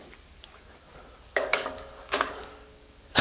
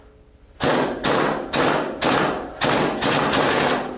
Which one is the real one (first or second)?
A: second